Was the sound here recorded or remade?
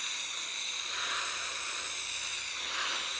recorded